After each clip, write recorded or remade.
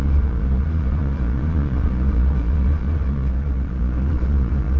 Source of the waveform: remade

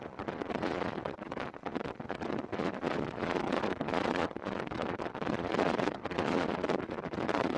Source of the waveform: remade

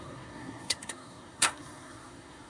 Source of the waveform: remade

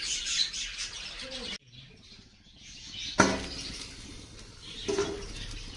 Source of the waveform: recorded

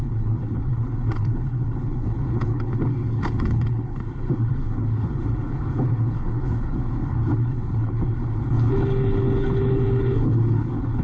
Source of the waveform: remade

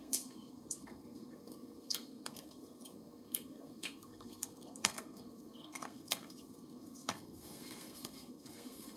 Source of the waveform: remade